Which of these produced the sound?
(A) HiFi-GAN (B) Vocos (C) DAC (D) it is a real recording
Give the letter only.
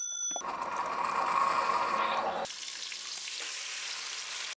D